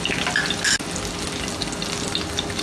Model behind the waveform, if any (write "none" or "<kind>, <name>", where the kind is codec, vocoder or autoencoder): none